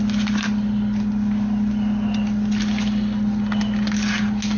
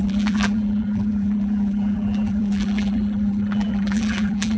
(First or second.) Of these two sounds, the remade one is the second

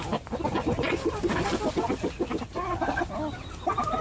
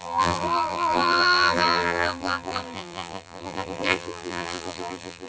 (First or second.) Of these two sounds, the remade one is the second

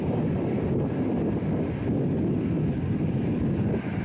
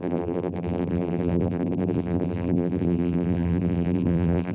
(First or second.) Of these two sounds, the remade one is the second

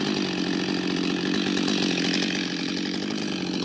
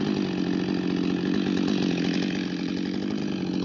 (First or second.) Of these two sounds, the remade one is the first